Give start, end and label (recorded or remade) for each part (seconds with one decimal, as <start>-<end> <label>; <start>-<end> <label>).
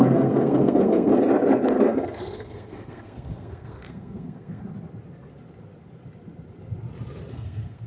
0.0-1.1 remade; 1.1-1.8 recorded; 1.8-4.6 remade; 4.6-7.3 recorded; 7.3-7.9 remade